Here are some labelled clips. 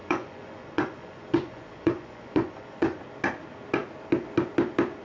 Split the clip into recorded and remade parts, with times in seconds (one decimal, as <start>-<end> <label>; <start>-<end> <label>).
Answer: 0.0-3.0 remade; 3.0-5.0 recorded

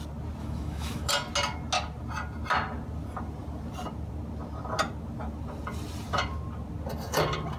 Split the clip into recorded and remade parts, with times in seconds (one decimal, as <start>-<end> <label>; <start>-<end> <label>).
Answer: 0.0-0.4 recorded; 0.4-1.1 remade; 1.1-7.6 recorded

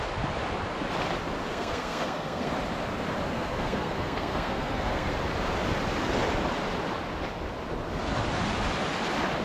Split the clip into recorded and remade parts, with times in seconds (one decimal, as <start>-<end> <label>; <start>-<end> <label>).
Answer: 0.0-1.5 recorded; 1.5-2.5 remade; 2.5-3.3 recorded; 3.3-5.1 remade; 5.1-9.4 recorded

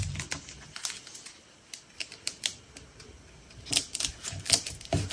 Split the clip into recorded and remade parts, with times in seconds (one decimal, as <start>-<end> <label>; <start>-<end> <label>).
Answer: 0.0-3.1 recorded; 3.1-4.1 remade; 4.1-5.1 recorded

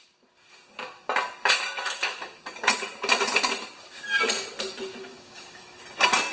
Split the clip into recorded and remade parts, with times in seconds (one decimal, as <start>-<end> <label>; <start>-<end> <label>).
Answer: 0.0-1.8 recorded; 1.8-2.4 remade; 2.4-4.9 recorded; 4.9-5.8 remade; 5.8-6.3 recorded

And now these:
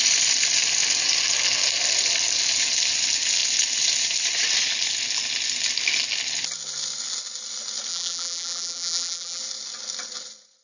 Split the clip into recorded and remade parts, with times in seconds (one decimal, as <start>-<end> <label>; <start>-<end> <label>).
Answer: 0.0-7.9 recorded; 7.9-9.4 remade; 9.4-10.6 recorded